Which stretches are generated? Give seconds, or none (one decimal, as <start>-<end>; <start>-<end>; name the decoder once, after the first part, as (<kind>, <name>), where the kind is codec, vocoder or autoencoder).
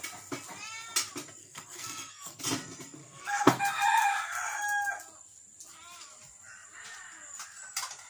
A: 1.4-2.4 (codec, SNAC); 3.0-3.6